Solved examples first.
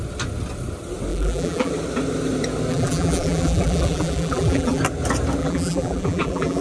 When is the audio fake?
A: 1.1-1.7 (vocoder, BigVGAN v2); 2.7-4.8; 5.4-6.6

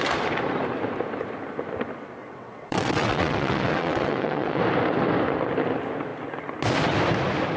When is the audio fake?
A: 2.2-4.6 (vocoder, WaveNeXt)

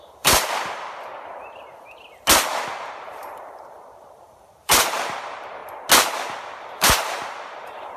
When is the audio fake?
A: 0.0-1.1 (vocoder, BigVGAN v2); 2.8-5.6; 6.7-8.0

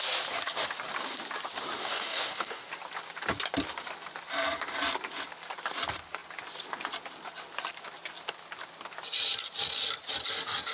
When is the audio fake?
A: 1.8-2.7 (codec, DAC)

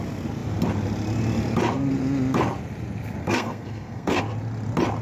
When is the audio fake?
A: 3.2-4.2 (codec, SNAC)